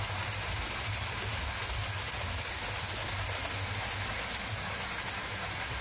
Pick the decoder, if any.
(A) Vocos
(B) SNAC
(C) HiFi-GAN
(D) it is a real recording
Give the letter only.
D